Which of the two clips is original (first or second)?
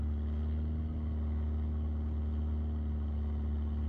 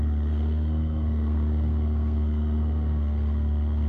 first